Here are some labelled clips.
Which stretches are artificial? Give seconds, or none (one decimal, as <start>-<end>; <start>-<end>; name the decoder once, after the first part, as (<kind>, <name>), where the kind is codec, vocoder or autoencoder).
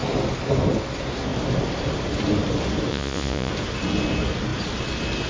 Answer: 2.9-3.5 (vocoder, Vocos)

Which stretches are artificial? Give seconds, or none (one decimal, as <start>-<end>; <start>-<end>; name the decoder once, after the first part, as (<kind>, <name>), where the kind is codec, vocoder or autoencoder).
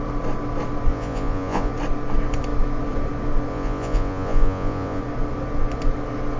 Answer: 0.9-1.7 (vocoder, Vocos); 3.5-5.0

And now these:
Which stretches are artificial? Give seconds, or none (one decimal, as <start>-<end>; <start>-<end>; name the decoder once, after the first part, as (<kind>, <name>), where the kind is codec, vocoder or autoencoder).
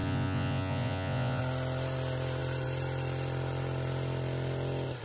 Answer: 0.0-1.4 (vocoder, Vocos)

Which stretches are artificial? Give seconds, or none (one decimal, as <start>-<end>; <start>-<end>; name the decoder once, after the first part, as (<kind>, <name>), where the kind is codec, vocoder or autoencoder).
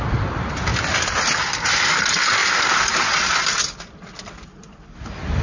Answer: none